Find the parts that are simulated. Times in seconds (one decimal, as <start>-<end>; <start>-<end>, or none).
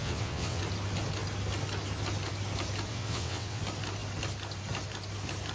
0.0-0.6; 2.9-3.6